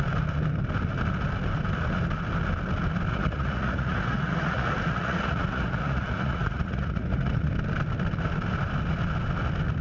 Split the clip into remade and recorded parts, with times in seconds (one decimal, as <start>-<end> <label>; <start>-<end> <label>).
0.0-3.1 recorded; 3.1-7.5 remade; 7.5-9.8 recorded